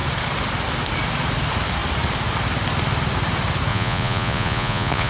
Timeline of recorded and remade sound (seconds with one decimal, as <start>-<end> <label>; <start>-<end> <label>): 0.0-3.7 recorded; 3.7-5.1 remade